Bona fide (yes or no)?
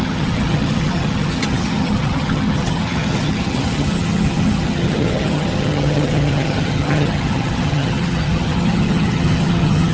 no